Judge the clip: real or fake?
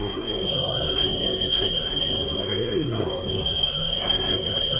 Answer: fake